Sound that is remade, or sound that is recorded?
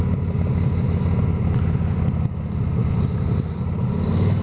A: recorded